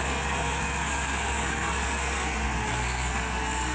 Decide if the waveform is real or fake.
fake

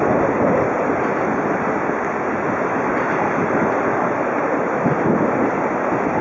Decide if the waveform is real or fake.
real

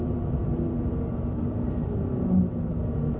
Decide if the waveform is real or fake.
fake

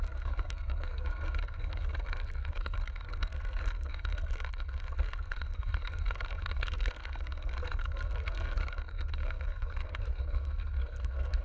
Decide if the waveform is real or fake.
fake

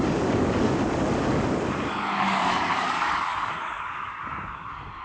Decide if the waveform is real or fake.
fake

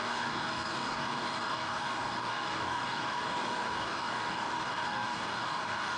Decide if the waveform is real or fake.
fake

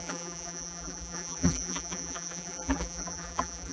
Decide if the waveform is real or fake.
fake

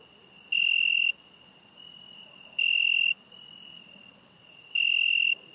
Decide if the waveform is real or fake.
fake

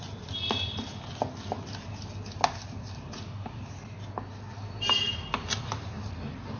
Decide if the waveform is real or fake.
real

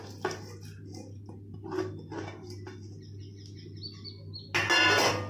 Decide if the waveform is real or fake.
real